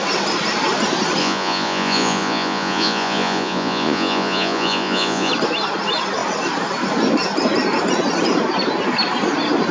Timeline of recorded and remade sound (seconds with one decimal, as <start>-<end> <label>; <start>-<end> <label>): 0.0-1.2 recorded; 1.2-5.3 remade; 5.3-9.7 recorded